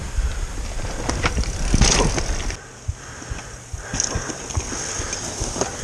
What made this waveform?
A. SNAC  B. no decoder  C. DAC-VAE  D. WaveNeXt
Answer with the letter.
B